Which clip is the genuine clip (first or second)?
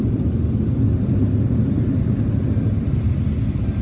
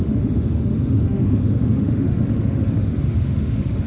first